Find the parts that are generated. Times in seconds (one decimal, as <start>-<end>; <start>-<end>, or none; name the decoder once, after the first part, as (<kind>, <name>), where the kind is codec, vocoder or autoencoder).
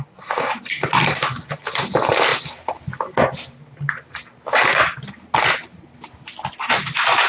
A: none